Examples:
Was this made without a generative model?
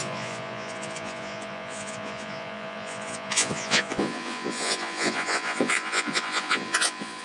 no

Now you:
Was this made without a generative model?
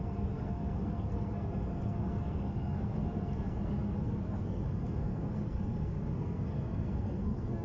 no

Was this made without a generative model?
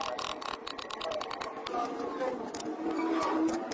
yes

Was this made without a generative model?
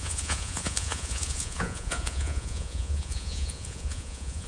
no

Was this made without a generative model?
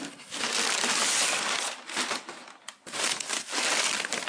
yes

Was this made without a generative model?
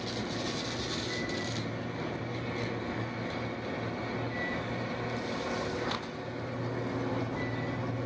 yes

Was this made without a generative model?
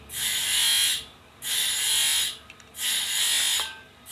yes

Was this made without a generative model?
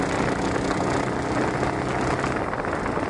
yes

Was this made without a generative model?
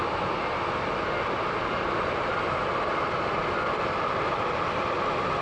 yes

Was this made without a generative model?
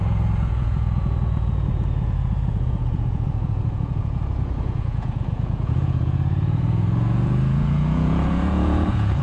no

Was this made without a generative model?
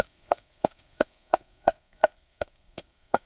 no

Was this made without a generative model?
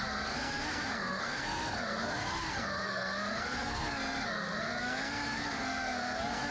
no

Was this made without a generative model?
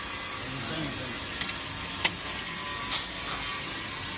yes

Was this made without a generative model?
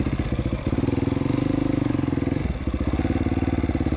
yes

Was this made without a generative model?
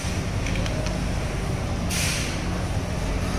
yes